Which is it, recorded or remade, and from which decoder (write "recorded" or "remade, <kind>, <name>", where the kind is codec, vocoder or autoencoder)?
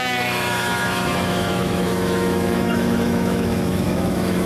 remade, autoencoder, DAC-VAE